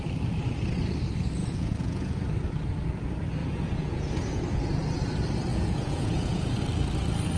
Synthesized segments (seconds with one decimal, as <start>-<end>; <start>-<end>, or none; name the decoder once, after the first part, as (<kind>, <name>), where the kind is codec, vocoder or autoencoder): 1.4-2.2 (vocoder, Vocos); 3.4-4.4; 5.5-6.6